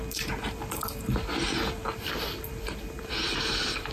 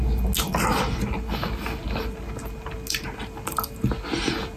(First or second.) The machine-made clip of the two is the first